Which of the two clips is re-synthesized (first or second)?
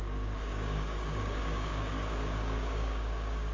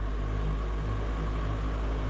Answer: first